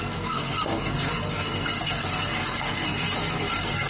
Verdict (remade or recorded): remade